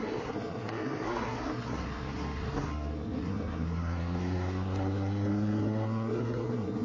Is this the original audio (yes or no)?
no